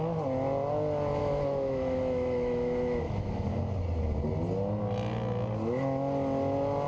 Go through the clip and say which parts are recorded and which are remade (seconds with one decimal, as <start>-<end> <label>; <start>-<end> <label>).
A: 0.0-1.2 recorded; 1.2-3.6 remade; 3.6-6.9 recorded